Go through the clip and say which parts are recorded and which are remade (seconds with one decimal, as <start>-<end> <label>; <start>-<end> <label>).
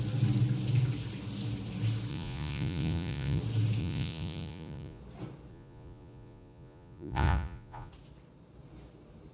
0.0-2.1 recorded; 2.1-3.4 remade; 3.4-3.8 recorded; 3.8-5.0 remade; 5.0-5.5 recorded; 5.5-7.9 remade; 7.9-9.3 recorded